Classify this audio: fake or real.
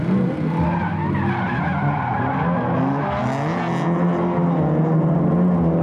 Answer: real